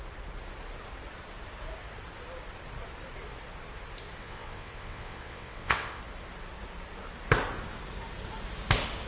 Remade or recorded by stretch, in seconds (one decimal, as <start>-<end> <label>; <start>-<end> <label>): 0.0-4.2 recorded; 4.2-6.0 remade; 6.0-9.1 recorded